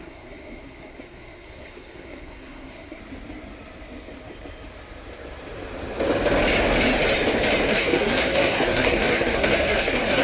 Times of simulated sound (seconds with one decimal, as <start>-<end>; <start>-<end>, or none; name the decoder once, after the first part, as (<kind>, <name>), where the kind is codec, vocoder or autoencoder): 0.0-3.0 (codec, SNAC); 7.7-10.2